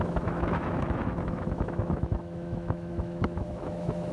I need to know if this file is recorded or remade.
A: remade